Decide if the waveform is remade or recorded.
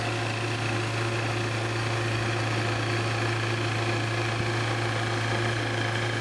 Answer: recorded